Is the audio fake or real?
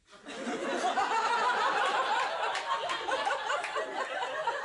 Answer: real